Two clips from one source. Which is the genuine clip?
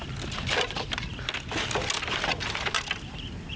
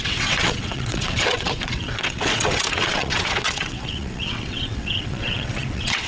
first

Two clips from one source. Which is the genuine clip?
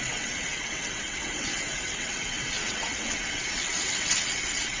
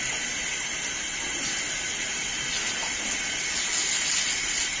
second